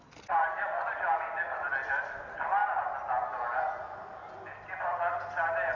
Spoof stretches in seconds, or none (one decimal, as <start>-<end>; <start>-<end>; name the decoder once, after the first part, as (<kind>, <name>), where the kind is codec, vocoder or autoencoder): none